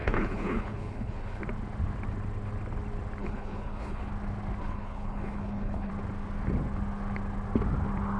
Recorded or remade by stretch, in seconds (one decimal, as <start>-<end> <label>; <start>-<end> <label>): 0.0-1.4 remade; 1.4-3.2 recorded; 3.2-4.1 remade; 4.1-4.6 recorded; 4.6-5.9 remade; 5.9-8.2 recorded